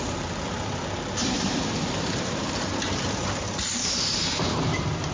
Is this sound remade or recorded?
remade